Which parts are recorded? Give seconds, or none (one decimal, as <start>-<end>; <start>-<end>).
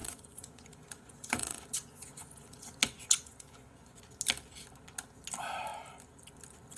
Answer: 4.0-6.8